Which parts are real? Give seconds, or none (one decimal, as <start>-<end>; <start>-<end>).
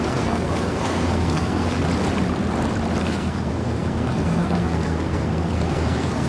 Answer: 1.8-3.0